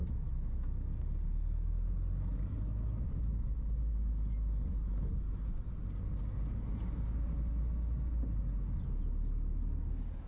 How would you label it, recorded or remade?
recorded